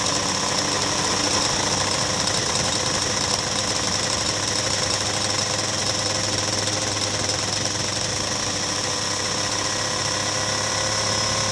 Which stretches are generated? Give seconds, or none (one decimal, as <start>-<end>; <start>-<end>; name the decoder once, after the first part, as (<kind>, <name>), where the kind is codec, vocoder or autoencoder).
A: none